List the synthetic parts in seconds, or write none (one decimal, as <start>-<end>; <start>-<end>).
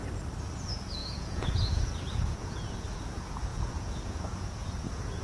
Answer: 0.6-5.2